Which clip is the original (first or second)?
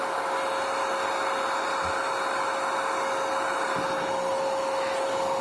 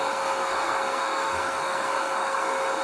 first